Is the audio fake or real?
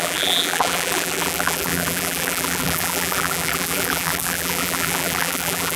fake